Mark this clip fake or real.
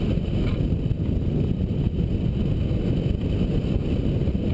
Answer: real